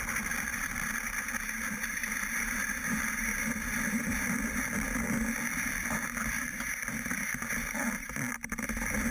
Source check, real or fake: fake